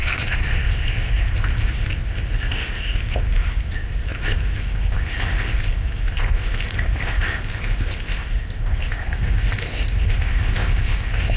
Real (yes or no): no